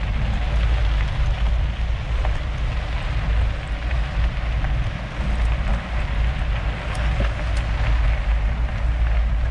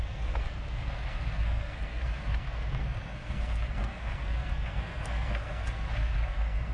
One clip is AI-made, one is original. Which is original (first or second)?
first